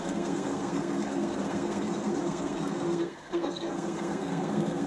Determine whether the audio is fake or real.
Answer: fake